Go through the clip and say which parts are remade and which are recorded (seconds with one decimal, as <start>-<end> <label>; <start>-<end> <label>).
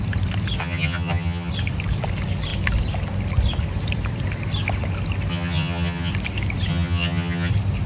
0.0-0.6 recorded; 0.6-1.5 remade; 1.5-5.3 recorded; 5.3-6.1 remade; 6.1-6.7 recorded; 6.7-7.5 remade; 7.5-7.9 recorded